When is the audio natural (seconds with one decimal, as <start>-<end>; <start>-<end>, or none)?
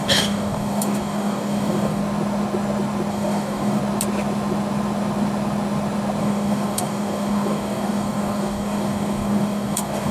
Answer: 2.0-3.1; 3.8-6.2